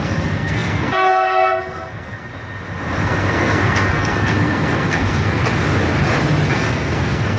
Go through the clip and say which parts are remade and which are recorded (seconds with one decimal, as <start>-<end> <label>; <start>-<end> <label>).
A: 0.0-2.3 remade; 2.3-3.0 recorded; 3.0-5.4 remade; 5.4-6.5 recorded; 6.5-7.4 remade